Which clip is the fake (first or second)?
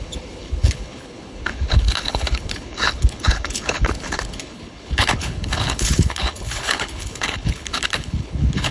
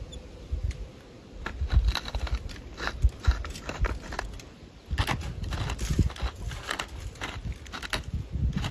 first